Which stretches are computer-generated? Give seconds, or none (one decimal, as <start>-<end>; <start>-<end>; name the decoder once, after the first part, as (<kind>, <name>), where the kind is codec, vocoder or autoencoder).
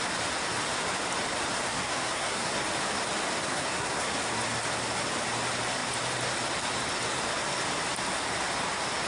1.7-2.5 (codec, SNAC); 3.5-4.1